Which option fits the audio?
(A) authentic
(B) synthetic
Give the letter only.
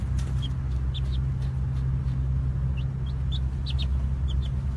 A